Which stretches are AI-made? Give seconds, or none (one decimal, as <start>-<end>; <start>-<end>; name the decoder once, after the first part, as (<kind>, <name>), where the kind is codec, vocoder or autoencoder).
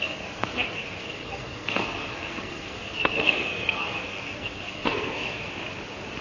0.0-5.5 (codec, SNAC)